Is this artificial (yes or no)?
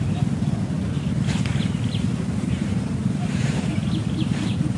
no